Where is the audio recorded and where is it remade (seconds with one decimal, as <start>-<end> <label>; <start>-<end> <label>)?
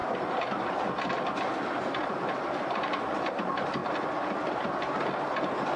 0.0-2.1 recorded; 2.1-3.8 remade; 3.8-5.8 recorded